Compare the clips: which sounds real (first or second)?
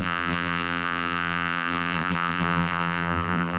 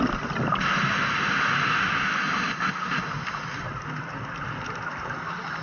second